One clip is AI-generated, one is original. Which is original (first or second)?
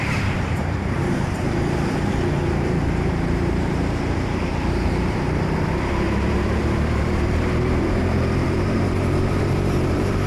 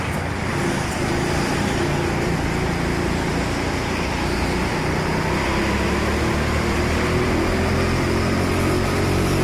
second